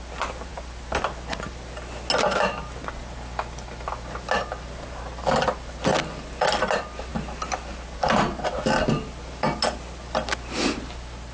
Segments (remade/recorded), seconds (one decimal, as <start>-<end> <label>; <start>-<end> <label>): 0.0-11.3 recorded

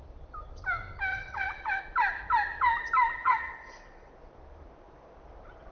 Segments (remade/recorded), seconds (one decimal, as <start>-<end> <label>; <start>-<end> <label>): 0.0-1.1 recorded; 1.1-1.8 remade; 1.8-3.2 recorded; 3.2-4.1 remade; 4.1-5.7 recorded

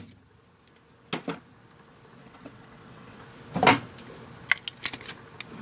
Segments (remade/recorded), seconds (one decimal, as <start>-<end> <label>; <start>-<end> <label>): 0.0-2.2 recorded; 2.2-3.2 remade; 3.2-5.6 recorded

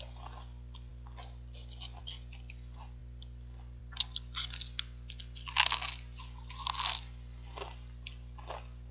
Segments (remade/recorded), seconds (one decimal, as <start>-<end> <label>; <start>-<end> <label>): 0.0-8.9 recorded

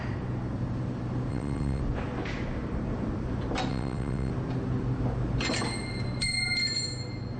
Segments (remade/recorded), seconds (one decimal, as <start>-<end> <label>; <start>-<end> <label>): 0.0-1.3 recorded; 1.3-1.8 remade; 1.8-3.7 recorded; 3.7-4.3 remade; 4.3-7.4 recorded

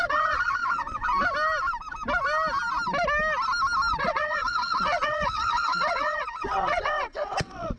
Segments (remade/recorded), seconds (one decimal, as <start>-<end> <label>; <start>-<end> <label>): 0.0-1.1 remade; 1.1-4.0 recorded; 4.0-7.8 remade